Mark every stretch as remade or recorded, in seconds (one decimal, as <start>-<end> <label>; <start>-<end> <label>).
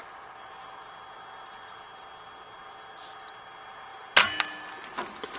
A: 0.0-5.4 recorded